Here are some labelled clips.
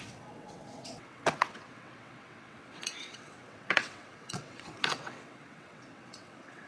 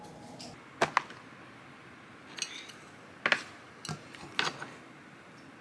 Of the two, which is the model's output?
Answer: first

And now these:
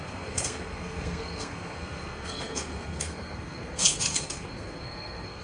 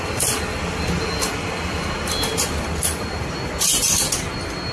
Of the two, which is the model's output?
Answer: first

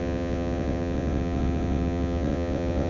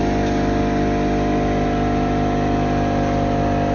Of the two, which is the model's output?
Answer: first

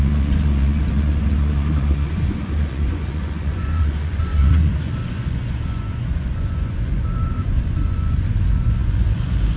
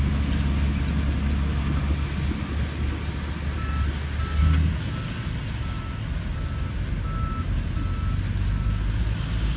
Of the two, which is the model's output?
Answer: first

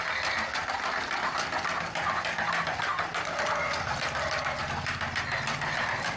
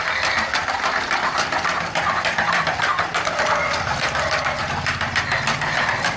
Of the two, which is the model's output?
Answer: second